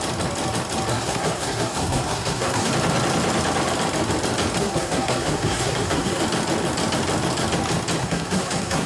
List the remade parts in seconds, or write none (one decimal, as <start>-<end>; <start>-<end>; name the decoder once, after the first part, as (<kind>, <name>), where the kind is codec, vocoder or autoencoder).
0.9-2.7 (codec, SNAC); 4.6-6.2; 8.0-8.9